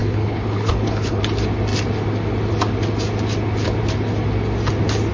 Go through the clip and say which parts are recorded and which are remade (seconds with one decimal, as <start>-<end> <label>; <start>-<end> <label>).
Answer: 0.0-1.2 remade; 1.2-5.1 recorded